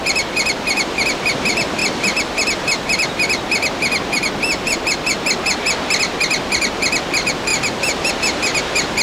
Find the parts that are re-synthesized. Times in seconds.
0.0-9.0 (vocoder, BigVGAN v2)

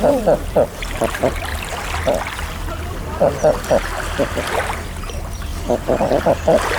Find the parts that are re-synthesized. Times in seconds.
0.0-1.5 (vocoder, BigVGAN v2); 5.0-5.5; 6.1-6.8